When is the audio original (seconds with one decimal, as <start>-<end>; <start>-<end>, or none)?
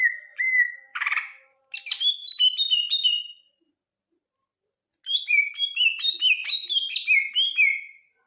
0.0-0.9; 1.6-8.3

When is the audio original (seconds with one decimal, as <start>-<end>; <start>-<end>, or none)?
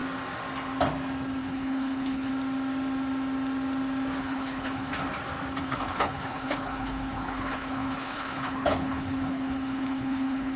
0.0-1.4; 2.3-4.2; 4.9-5.6